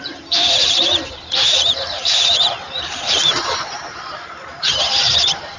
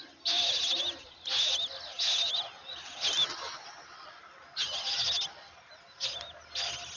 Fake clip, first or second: first